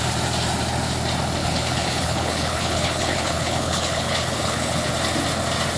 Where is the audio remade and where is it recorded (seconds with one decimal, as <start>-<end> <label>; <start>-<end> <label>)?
0.0-1.4 recorded; 1.4-4.9 remade; 4.9-5.8 recorded